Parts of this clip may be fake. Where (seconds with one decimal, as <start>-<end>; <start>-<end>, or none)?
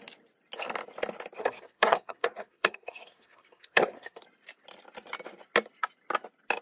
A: 1.4-4.2